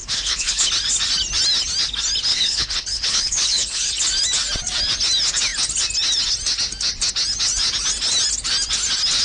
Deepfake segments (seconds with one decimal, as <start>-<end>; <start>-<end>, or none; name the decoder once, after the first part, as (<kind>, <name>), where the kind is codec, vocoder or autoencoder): 0.0-0.7 (codec, HILCodec); 2.3-3.9